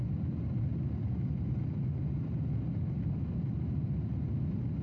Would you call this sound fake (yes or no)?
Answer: no